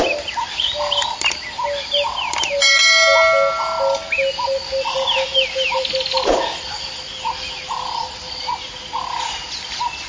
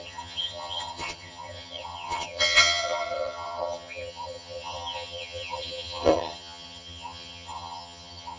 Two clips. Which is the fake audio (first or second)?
second